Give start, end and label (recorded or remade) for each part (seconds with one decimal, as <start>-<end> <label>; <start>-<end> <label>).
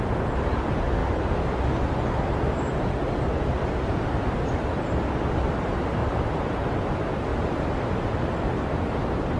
0.0-6.0 recorded; 6.0-6.8 remade; 6.8-9.4 recorded